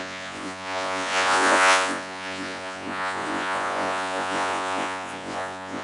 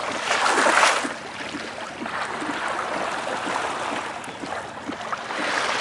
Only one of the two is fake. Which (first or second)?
first